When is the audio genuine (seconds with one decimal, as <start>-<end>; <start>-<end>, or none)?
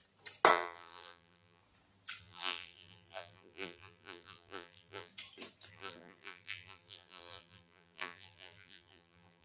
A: 0.0-0.5; 1.6-2.2; 5.1-5.7